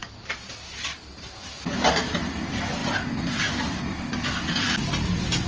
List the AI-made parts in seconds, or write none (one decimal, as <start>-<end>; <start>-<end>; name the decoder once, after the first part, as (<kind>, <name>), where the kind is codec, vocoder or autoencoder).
none